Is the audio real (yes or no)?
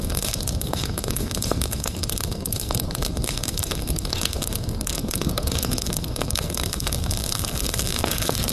no